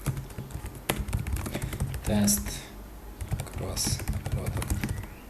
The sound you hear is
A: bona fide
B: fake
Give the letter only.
A